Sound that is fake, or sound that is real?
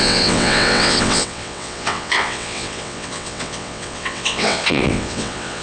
fake